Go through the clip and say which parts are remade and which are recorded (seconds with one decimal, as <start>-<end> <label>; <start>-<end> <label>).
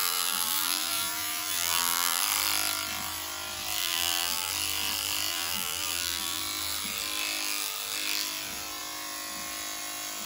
0.0-2.2 remade; 2.2-3.8 recorded; 3.8-4.5 remade; 4.5-5.3 recorded; 5.3-6.4 remade; 6.4-10.3 recorded